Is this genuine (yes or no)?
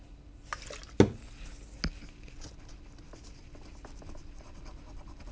yes